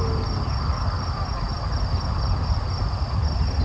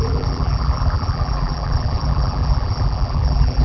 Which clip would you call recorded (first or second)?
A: first